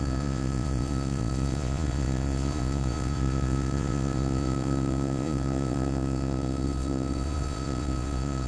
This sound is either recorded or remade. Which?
remade